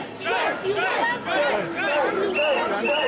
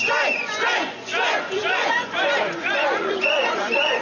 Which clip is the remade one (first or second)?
second